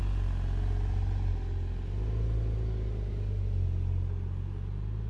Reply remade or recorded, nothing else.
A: recorded